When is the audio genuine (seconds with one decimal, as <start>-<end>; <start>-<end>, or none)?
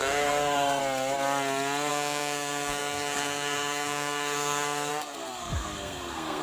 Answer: 0.8-1.9